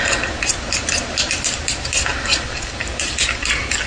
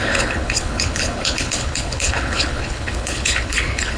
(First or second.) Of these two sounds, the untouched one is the first